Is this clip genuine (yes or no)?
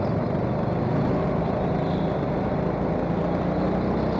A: yes